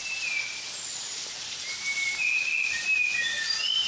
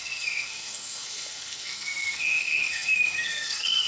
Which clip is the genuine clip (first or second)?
first